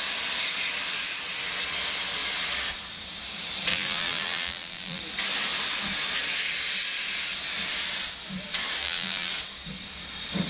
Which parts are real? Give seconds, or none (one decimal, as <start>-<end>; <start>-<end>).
0.0-3.7; 5.0-8.8; 9.3-10.5